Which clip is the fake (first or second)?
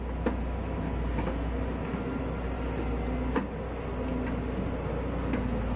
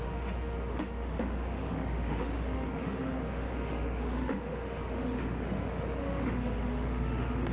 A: second